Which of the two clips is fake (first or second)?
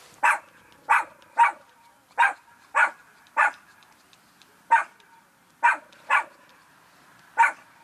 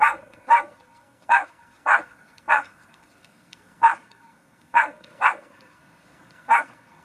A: second